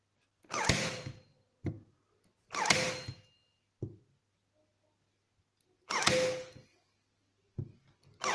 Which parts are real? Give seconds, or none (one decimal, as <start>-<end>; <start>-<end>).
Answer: 0.0-8.3